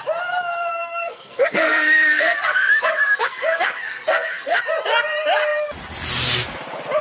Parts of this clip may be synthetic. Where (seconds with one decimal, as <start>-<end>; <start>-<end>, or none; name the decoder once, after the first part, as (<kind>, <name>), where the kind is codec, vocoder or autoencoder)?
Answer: 0.7-4.6 (codec, SNAC)